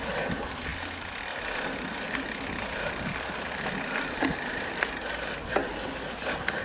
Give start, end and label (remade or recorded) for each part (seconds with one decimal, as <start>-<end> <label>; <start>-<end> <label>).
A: 0.0-6.6 recorded